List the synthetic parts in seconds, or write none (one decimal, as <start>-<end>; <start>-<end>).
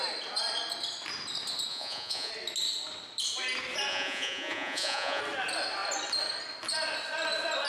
1.7-2.3; 3.9-5.2